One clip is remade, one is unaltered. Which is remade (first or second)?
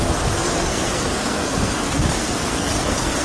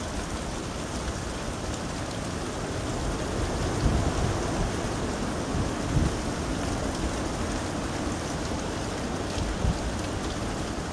first